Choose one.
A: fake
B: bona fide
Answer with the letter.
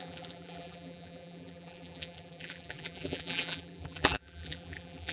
A